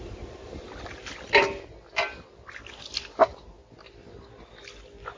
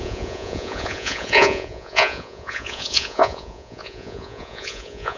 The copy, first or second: second